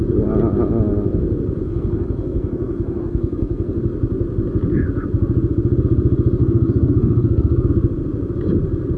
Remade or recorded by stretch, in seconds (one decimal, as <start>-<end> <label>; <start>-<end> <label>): 0.0-1.6 recorded; 1.6-3.8 remade; 3.8-6.4 recorded; 6.4-7.7 remade; 7.7-9.0 recorded